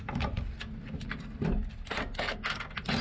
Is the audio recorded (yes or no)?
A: yes